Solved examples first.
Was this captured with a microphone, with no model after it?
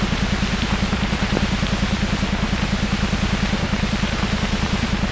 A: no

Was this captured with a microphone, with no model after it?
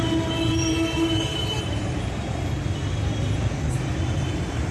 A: no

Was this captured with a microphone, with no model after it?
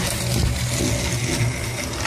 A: yes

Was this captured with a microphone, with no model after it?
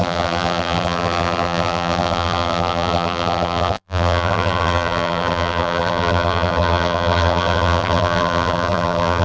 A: no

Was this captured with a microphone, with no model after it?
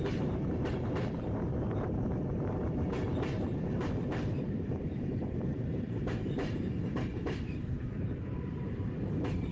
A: no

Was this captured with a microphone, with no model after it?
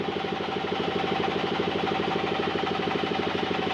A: yes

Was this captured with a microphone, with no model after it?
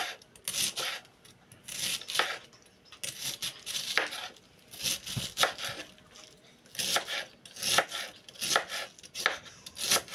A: yes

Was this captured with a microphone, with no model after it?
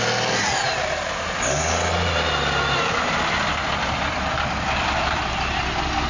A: yes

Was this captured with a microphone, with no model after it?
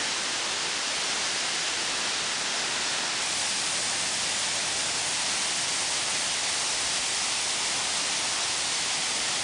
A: yes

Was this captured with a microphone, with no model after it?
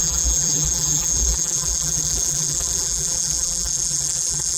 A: no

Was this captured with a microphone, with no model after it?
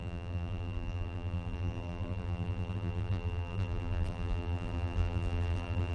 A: no